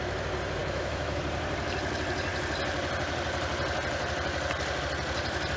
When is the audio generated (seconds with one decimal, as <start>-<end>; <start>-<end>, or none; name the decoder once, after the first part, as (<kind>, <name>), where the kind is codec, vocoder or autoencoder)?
0.6-1.2 (autoencoder, DAC-VAE)